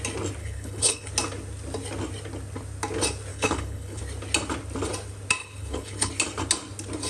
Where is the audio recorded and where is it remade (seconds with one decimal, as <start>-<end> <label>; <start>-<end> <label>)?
0.0-0.4 recorded; 0.4-1.1 remade; 1.1-3.3 recorded; 3.3-4.0 remade; 4.0-5.4 recorded; 5.4-6.1 remade; 6.1-7.1 recorded